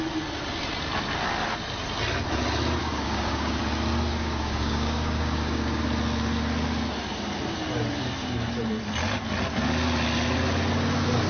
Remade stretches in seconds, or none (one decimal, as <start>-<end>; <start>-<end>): 2.8-3.6; 4.1-5.8